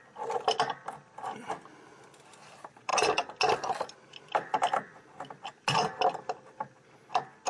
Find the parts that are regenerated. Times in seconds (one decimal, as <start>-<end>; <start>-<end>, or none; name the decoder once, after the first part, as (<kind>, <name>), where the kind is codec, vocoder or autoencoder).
none